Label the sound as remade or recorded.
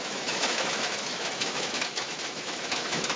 remade